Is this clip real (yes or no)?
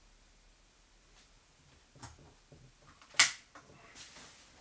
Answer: yes